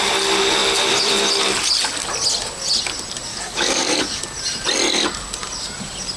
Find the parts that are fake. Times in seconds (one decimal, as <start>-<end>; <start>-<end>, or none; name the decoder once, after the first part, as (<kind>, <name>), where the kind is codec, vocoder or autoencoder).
3.3-4.2 (codec, DAC)